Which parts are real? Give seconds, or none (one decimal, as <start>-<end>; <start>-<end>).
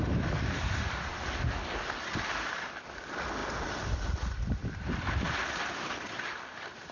0.0-6.9